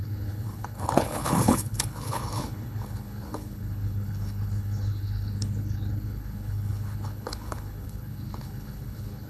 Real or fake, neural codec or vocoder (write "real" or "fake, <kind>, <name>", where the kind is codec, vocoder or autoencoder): fake, codec, HILCodec